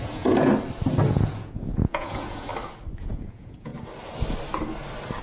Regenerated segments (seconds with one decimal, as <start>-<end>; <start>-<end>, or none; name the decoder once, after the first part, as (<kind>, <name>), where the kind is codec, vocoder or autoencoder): 0.0-0.5 (vocoder, Vocos); 1.1-2.5; 3.0-3.7